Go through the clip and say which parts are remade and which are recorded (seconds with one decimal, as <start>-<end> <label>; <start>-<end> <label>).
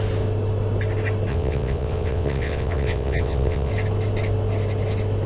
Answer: 0.0-1.3 recorded; 1.3-3.7 remade; 3.7-5.3 recorded